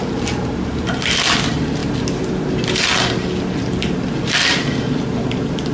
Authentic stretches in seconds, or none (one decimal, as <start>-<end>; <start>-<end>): 0.0-5.7